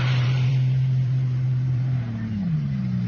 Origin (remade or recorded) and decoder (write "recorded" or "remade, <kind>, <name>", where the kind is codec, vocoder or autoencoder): remade, vocoder, BigVGAN v2